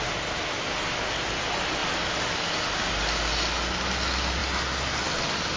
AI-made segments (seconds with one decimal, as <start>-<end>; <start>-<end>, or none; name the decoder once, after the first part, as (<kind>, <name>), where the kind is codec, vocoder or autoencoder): none